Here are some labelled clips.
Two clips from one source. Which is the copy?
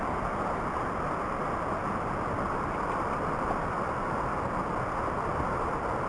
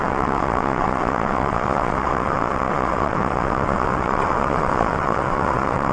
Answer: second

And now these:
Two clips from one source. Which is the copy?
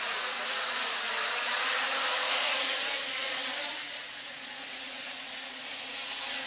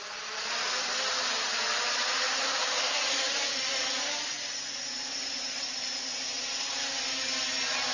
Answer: first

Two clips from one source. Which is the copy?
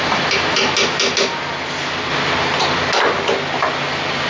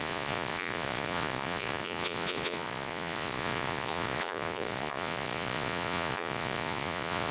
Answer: second